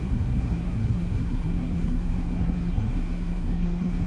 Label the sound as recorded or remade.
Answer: remade